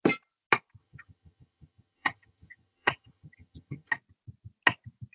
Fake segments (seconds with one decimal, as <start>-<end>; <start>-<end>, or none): 0.8-3.9